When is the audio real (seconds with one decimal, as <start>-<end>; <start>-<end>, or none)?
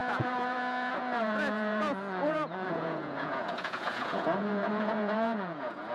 none